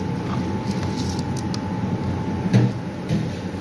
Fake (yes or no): no